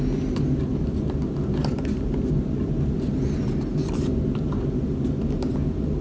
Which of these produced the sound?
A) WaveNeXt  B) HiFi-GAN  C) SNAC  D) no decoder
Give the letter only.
D